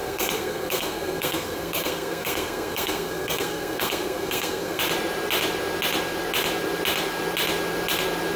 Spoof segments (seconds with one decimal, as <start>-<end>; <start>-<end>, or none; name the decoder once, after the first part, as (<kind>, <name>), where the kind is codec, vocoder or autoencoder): 0.0-4.8 (codec, SNAC)